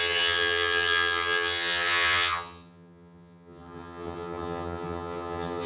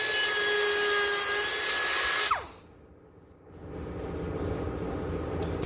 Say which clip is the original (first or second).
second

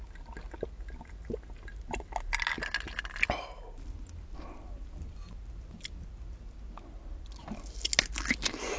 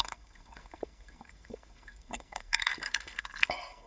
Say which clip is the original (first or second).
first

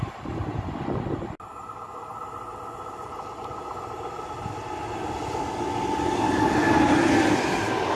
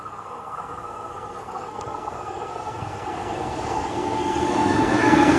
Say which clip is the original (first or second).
first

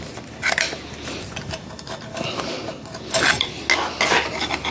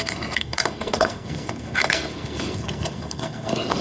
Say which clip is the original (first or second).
first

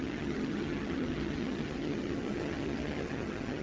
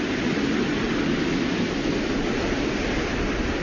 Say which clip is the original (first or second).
second